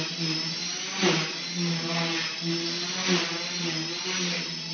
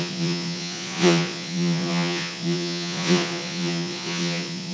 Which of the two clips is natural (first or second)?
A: first